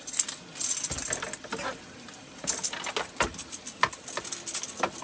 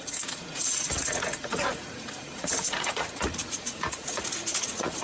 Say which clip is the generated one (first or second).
second